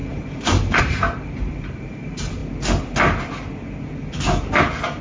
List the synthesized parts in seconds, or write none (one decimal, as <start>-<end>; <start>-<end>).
0.0-2.4